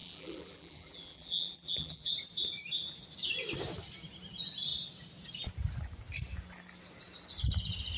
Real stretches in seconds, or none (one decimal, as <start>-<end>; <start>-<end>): 2.1-8.0